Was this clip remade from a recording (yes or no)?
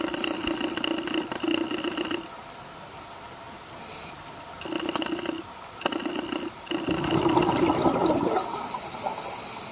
no